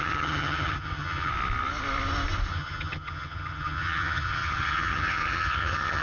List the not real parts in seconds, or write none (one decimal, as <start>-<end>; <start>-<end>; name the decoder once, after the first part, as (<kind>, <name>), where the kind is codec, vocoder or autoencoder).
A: 0.0-1.3 (vocoder, HiFi-GAN); 2.5-6.0